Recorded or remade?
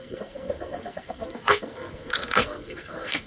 remade